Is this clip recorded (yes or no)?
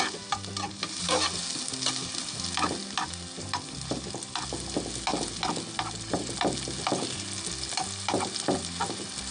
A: yes